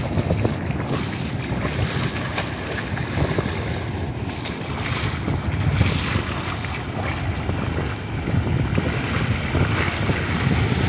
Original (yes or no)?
yes